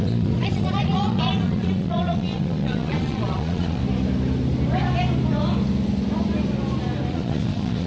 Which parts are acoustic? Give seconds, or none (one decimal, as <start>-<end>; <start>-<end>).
3.8-7.1